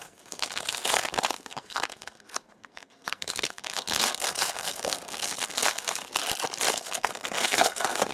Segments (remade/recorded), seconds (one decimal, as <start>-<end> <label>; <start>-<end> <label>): 0.0-6.2 remade; 6.2-6.7 recorded; 6.7-8.1 remade